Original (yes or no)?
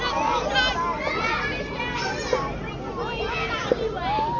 yes